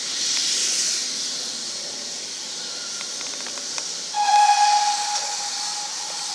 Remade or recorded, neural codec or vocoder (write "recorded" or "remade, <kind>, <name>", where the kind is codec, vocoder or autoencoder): recorded